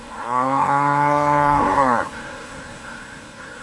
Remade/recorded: remade